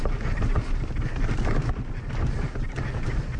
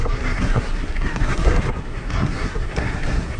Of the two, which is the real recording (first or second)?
first